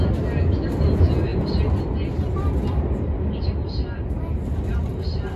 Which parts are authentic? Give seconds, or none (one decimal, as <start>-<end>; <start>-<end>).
0.0-5.4